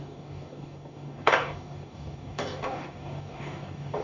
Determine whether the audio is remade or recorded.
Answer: remade